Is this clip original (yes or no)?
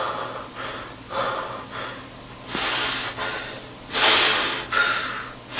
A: yes